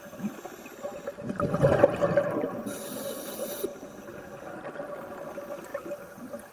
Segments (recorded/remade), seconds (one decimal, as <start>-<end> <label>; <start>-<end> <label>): 0.0-6.5 recorded